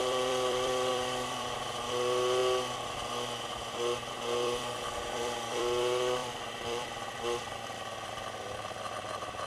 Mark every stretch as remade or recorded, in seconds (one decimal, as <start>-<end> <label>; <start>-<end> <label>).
0.0-2.4 remade; 2.4-4.1 recorded; 4.1-9.5 remade